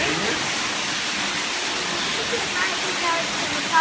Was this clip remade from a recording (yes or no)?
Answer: no